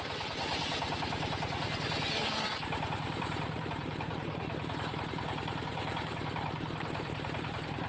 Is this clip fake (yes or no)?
yes